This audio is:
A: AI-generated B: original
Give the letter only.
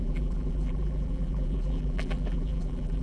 A